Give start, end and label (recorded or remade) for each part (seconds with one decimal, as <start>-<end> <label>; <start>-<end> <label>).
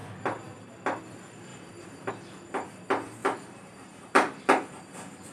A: 0.0-1.5 recorded; 1.5-2.1 remade; 2.1-3.2 recorded; 3.2-4.8 remade; 4.8-5.3 recorded